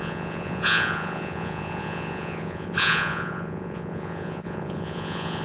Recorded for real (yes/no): no